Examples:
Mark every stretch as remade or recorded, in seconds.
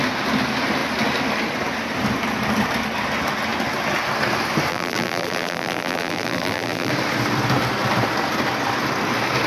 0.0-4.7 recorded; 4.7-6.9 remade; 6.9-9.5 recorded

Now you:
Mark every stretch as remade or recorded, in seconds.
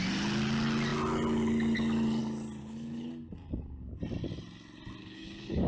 0.0-2.6 recorded; 2.6-3.1 remade; 3.1-5.0 recorded; 5.0-5.7 remade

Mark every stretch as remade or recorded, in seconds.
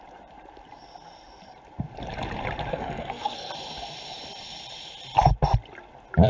0.0-2.7 recorded; 2.7-3.5 remade; 3.5-6.3 recorded